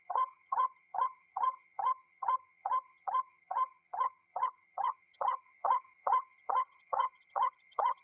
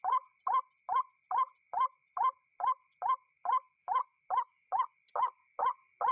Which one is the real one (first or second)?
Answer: second